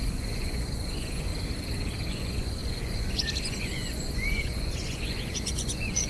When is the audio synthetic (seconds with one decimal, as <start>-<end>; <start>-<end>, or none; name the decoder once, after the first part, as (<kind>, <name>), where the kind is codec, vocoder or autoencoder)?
0.0-1.3 (vocoder, Vocos); 2.1-6.1